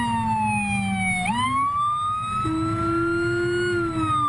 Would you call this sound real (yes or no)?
yes